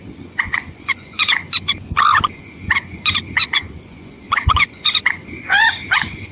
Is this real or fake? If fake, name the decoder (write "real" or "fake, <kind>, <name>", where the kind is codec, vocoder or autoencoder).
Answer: fake, vocoder, Vocos